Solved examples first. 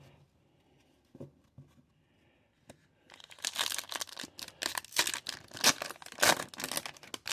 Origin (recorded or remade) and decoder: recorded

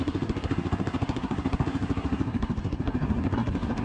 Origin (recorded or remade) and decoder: remade, codec, SNAC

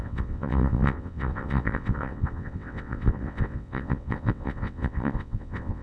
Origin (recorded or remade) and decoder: remade, vocoder, WaveNeXt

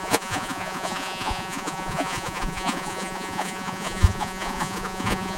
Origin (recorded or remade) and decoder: remade, vocoder, Vocos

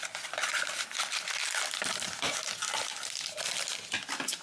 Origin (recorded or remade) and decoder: recorded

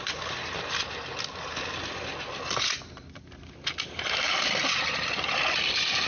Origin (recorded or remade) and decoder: recorded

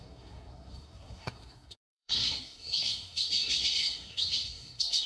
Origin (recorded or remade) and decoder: remade, codec, SNAC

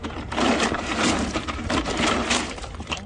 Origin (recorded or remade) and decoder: remade, vocoder, BigVGAN v2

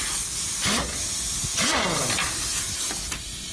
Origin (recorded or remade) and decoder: recorded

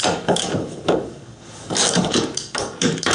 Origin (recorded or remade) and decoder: remade, codec, DAC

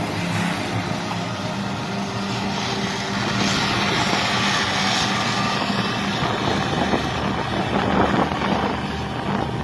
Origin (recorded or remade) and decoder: recorded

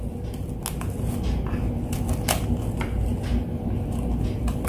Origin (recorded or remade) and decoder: recorded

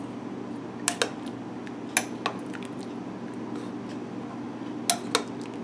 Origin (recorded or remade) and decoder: recorded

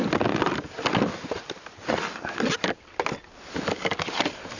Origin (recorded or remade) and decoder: recorded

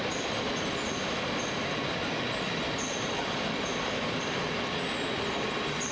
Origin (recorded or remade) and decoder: recorded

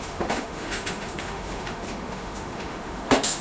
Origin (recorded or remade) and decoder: remade, autoencoder, DAC-VAE